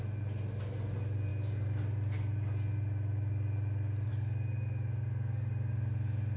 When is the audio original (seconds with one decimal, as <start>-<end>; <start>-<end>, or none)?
0.0-6.4